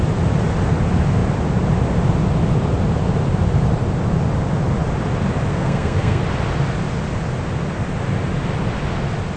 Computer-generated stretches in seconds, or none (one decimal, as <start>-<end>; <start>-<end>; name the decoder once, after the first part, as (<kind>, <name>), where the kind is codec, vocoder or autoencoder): 5.5-6.2 (codec, SNAC)

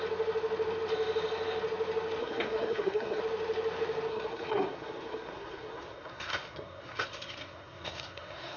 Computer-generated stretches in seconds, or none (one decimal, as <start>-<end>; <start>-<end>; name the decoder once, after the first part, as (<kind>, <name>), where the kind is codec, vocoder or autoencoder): 2.2-3.2 (codec, SNAC); 4.1-8.6

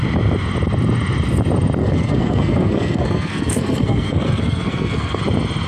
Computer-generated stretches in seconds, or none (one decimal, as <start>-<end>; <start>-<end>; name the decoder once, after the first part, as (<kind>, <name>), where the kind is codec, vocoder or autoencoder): 1.8-5.2 (codec, SNAC)

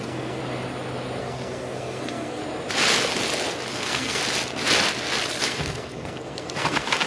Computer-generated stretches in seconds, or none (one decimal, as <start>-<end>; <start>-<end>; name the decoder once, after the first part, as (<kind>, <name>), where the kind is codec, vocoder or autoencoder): 0.0-0.4 (codec, SNAC); 1.2-2.4; 3.7-4.2; 5.4-7.1

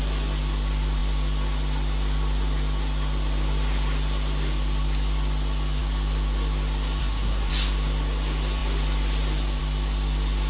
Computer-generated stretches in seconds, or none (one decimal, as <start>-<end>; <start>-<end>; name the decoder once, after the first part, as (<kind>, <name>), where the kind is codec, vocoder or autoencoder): 7.0-7.5 (codec, SNAC)